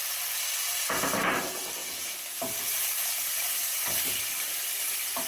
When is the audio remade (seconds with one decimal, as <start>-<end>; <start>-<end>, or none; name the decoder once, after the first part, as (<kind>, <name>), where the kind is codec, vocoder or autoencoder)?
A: 1.8-2.4 (autoencoder, DAC-VAE)